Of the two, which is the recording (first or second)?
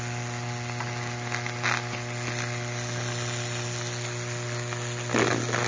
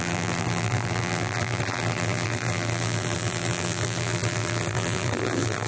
first